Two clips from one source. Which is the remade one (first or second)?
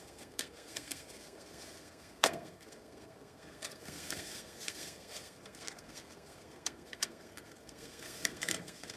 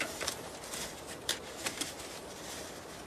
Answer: first